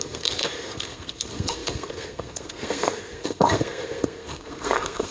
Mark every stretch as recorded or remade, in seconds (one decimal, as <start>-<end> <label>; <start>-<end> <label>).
0.0-5.1 remade